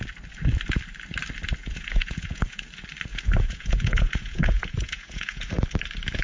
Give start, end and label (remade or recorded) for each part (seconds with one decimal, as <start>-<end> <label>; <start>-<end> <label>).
0.0-1.6 recorded; 1.6-2.7 remade; 2.7-3.1 recorded; 3.1-5.5 remade; 5.5-6.2 recorded